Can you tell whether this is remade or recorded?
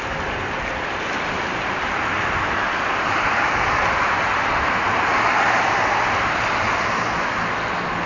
recorded